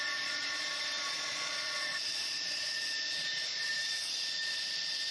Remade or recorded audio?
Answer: remade